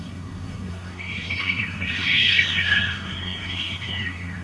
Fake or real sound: fake